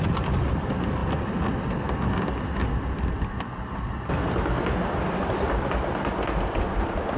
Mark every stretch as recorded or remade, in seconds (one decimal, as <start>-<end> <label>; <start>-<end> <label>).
0.0-7.2 recorded